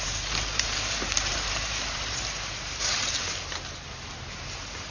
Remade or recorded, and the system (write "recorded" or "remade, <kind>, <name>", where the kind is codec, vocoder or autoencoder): remade, vocoder, BigVGAN v2